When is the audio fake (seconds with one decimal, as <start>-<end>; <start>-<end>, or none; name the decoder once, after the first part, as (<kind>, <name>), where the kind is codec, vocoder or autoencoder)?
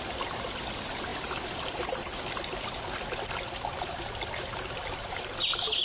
0.0-5.8 (vocoder, BigVGAN v2)